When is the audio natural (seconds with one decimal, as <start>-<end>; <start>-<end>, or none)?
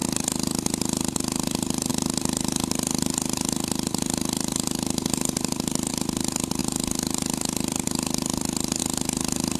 0.0-9.6